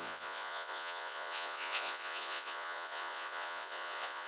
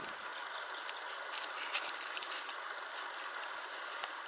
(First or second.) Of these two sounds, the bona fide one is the second